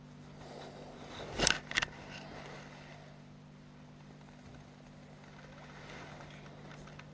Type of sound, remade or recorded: recorded